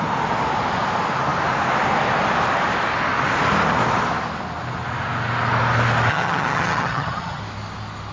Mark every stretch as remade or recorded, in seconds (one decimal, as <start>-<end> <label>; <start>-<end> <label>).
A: 0.0-6.1 recorded; 6.1-7.4 remade; 7.4-8.1 recorded